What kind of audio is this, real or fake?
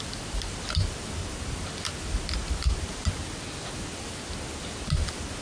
real